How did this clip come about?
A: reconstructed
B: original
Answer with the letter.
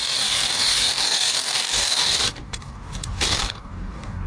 A